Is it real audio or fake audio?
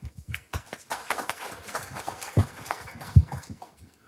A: fake